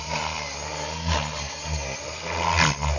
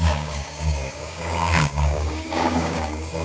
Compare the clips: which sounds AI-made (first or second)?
second